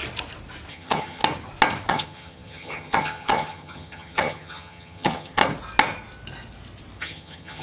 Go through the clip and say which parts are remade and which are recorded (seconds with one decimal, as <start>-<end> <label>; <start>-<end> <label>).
0.0-0.7 recorded; 0.7-1.2 remade; 1.2-1.9 recorded; 1.9-5.4 remade; 5.4-7.0 recorded; 7.0-7.6 remade